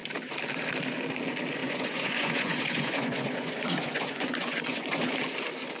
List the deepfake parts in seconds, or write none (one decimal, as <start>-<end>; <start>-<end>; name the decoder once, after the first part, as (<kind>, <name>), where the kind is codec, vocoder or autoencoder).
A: 1.6-5.1 (vocoder, Vocos)